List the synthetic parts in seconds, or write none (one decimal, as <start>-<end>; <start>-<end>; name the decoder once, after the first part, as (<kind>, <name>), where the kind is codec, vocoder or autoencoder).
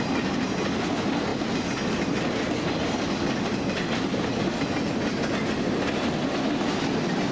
none